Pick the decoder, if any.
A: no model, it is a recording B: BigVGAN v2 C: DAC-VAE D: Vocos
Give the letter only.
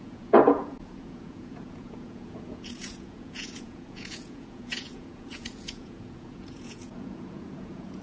D